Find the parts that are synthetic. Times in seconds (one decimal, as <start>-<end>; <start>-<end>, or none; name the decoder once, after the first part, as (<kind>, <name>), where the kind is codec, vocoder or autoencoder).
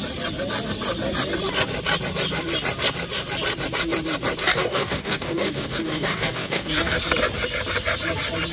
4.5-7.0 (codec, DAC)